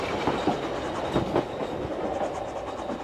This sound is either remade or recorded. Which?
recorded